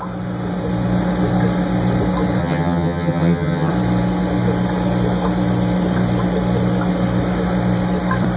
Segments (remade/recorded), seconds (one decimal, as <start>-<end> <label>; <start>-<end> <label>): 0.0-2.4 recorded; 2.4-3.7 remade; 3.7-8.4 recorded